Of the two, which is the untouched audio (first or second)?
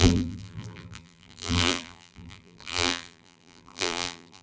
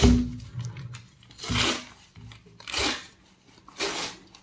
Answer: second